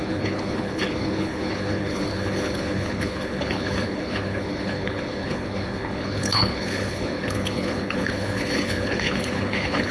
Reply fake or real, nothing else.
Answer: fake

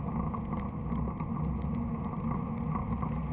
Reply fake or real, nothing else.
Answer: real